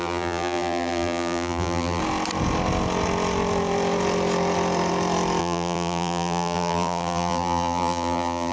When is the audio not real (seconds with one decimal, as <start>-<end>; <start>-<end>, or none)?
0.0-2.0; 5.4-8.5